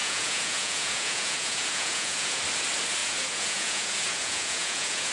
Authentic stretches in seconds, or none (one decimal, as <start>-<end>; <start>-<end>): 2.4-3.0